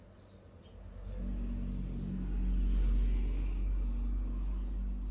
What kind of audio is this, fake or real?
real